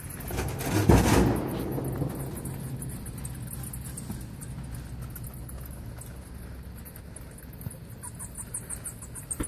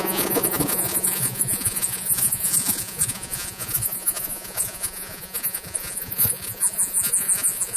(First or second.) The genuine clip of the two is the first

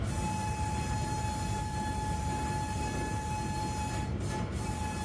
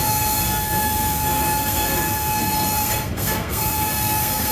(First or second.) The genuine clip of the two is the first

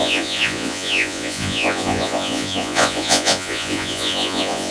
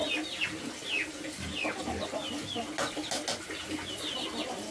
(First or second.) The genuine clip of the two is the second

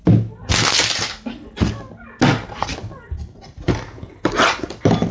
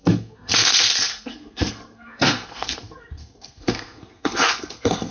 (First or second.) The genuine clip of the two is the first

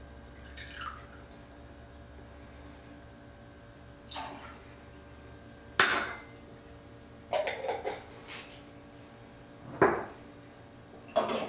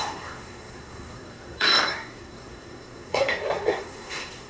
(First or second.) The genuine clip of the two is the first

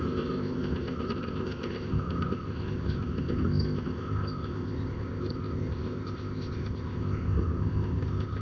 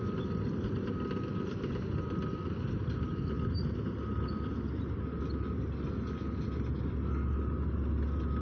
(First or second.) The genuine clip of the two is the second